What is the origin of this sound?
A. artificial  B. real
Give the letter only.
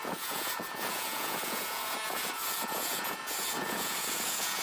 A